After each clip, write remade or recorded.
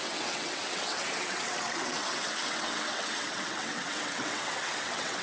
remade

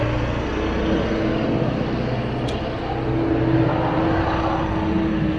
recorded